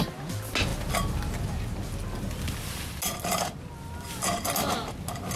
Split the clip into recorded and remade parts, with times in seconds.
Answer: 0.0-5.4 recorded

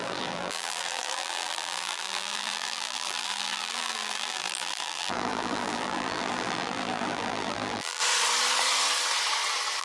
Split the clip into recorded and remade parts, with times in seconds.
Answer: 0.0-8.0 remade; 8.0-9.8 recorded